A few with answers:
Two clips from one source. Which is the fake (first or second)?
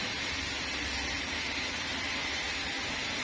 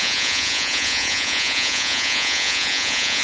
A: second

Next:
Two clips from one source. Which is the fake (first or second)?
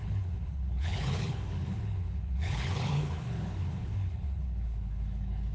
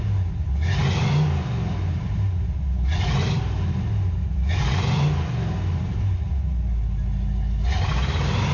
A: first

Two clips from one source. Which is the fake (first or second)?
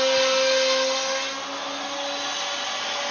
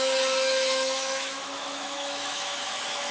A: second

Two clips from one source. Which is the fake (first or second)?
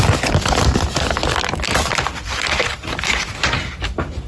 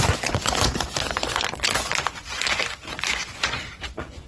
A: second